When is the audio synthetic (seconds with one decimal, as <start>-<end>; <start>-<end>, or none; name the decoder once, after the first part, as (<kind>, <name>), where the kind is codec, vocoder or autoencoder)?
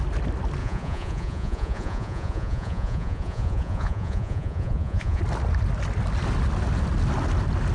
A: 0.6-5.2 (vocoder, Vocos)